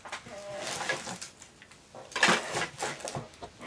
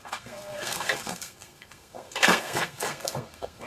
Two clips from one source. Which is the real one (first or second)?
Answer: first